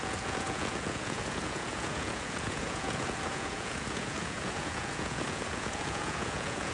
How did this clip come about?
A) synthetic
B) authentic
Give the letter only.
A